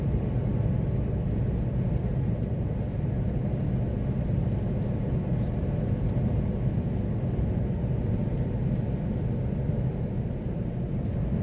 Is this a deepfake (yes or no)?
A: no